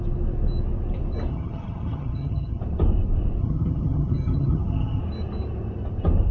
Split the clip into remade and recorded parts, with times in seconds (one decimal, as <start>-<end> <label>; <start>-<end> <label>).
0.0-1.3 recorded; 1.3-2.6 remade; 2.6-3.4 recorded; 3.4-5.0 remade; 5.0-6.3 recorded